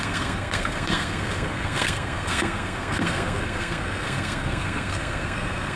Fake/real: fake